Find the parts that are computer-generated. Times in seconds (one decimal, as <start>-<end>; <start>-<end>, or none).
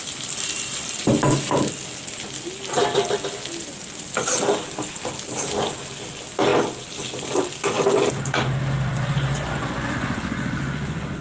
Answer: 8.9-11.2